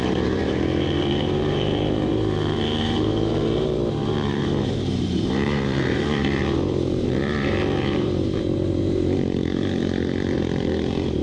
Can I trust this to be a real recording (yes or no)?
no